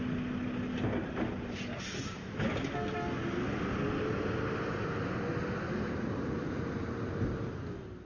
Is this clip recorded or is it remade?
recorded